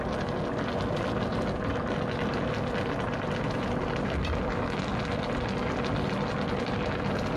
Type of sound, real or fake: real